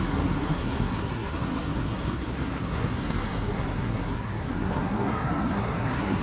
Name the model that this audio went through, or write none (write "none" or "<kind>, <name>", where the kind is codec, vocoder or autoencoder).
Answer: codec, SNAC